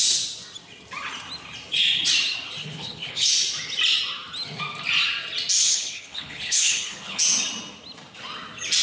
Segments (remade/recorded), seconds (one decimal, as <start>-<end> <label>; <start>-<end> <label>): 0.0-2.6 recorded; 2.6-3.3 remade; 3.3-5.6 recorded; 5.6-7.2 remade; 7.2-8.8 recorded

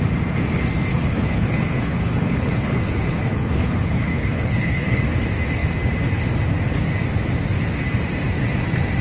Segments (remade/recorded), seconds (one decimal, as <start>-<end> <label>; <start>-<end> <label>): 0.0-0.9 recorded; 0.9-5.0 remade; 5.0-9.0 recorded

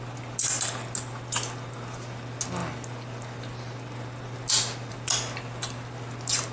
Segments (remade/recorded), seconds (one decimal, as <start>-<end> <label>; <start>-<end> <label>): 0.0-6.5 recorded

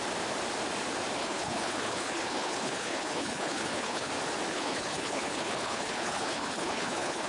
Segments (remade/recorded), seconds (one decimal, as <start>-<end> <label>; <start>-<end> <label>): 0.0-1.2 recorded; 1.2-4.1 remade; 4.1-4.5 recorded; 4.5-7.3 remade

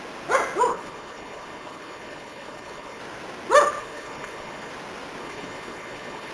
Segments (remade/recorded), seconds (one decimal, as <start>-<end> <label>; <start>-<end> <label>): 0.0-0.7 recorded; 0.7-3.0 remade; 3.0-3.8 recorded; 3.8-4.7 remade; 4.7-5.2 recorded; 5.2-6.3 remade